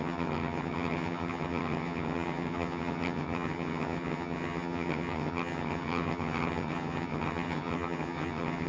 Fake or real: fake